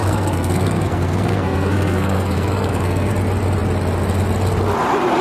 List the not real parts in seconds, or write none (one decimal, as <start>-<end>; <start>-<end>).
0.0-3.1